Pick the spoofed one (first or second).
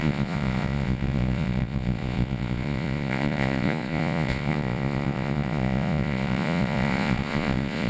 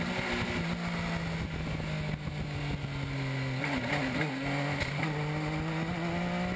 first